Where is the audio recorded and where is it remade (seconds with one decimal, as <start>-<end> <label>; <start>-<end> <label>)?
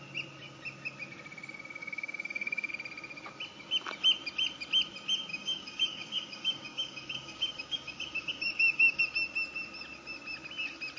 0.0-1.8 recorded; 1.8-2.7 remade; 2.7-5.3 recorded; 5.3-9.0 remade; 9.0-11.0 recorded